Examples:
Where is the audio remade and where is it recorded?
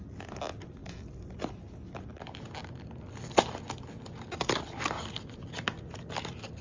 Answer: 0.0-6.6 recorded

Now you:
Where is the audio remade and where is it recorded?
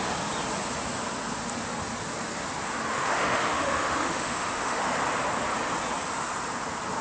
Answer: 0.0-2.9 recorded; 2.9-4.8 remade; 4.8-7.0 recorded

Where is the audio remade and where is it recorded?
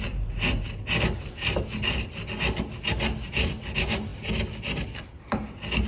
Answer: 0.0-5.9 recorded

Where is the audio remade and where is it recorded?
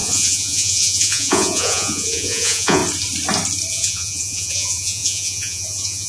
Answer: 0.0-2.8 remade; 2.8-3.7 recorded; 3.7-6.1 remade